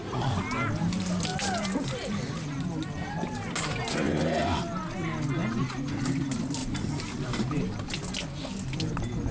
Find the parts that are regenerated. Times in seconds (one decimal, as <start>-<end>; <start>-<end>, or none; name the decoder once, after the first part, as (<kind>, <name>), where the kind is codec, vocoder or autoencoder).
1.3-3.8 (vocoder, BigVGAN v2); 6.6-7.9